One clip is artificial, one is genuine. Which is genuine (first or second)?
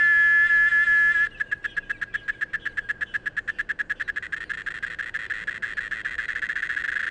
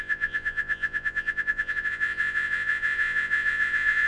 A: first